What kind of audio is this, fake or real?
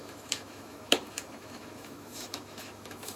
fake